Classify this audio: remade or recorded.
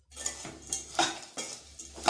recorded